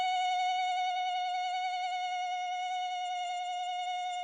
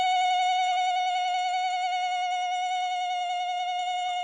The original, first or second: second